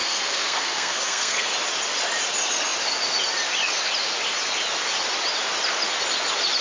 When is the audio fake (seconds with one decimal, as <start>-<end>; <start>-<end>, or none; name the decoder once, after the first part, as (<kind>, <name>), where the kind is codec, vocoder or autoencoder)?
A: 0.0-1.5 (codec, SNAC)